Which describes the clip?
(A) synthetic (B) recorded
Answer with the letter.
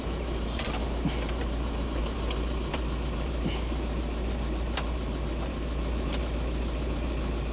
A